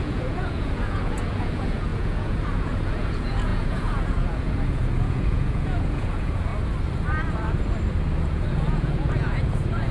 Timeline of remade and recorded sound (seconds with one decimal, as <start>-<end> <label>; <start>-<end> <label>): 0.0-6.5 remade; 6.5-8.2 recorded; 8.2-9.9 remade